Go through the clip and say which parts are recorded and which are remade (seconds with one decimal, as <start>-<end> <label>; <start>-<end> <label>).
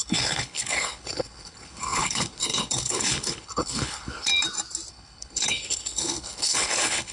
0.0-4.3 remade; 4.3-4.9 recorded; 4.9-7.1 remade